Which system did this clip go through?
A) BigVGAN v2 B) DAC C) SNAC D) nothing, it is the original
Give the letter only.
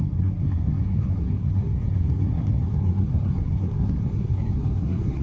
C